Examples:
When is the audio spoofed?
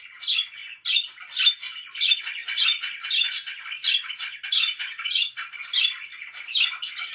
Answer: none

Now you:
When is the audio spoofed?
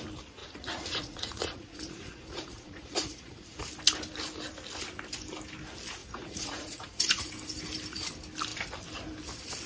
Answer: 0.4-3.6 (vocoder, Vocos); 6.0-7.3